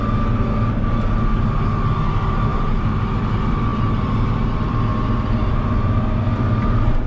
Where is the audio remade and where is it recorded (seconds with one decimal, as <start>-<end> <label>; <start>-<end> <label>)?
0.0-2.5 recorded; 2.5-3.0 remade; 3.0-7.1 recorded